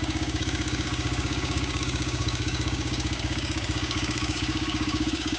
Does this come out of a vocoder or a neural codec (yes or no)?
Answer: yes